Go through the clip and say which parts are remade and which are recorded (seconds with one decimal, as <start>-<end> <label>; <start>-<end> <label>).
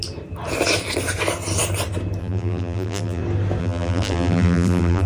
0.0-2.2 recorded; 2.2-3.2 remade; 3.2-3.6 recorded; 3.6-5.1 remade